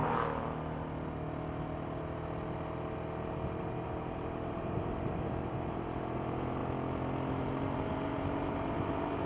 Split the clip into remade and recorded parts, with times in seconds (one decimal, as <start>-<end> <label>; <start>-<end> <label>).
0.0-3.6 recorded; 3.6-6.6 remade; 6.6-7.4 recorded; 7.4-9.2 remade